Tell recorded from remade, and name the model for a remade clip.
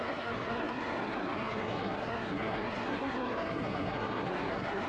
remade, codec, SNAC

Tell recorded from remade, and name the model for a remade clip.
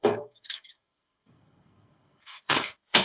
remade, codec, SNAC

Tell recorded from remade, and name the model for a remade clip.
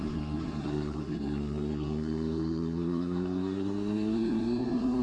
remade, codec, SNAC